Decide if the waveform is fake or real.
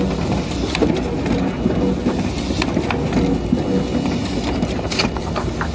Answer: real